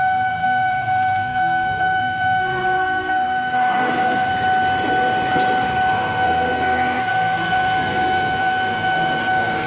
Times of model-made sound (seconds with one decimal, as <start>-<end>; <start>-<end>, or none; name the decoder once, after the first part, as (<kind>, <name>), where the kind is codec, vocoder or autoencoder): 0.0-4.3 (codec, SNAC); 5.9-9.7